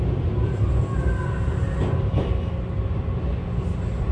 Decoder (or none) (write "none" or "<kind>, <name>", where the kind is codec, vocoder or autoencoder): none